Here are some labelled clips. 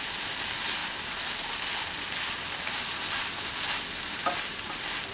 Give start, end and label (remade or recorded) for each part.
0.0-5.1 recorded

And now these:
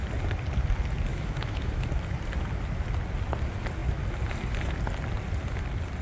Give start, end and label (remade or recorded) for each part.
0.0-1.1 recorded; 1.1-1.8 remade; 1.8-6.0 recorded

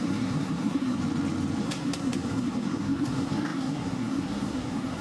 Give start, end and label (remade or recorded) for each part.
0.0-1.0 remade; 1.0-1.6 recorded; 1.6-5.0 remade

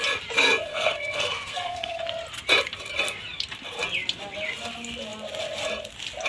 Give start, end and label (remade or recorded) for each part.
0.0-0.7 recorded; 0.7-2.0 remade; 2.0-6.3 recorded

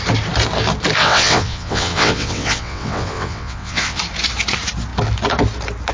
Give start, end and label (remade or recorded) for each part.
0.0-1.0 recorded; 1.0-4.0 remade; 4.0-5.9 recorded

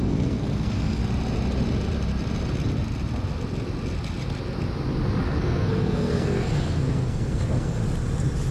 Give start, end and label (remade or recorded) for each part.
0.0-1.0 remade; 1.0-5.2 recorded; 5.2-7.8 remade; 7.8-8.5 recorded

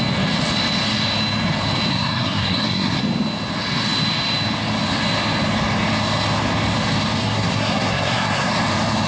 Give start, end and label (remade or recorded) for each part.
0.0-1.9 recorded; 1.9-3.0 remade; 3.0-7.2 recorded; 7.2-8.5 remade; 8.5-9.1 recorded